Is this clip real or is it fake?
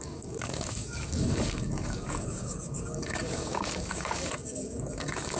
fake